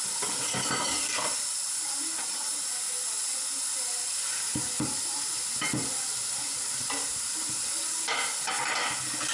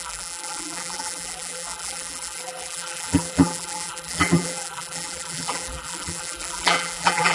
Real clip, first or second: first